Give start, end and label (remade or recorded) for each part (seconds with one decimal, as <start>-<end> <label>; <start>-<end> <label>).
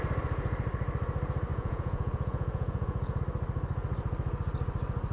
0.0-1.5 recorded; 1.5-3.2 remade; 3.2-5.1 recorded